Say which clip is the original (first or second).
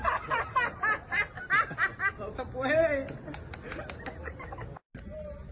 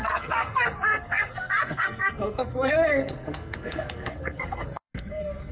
first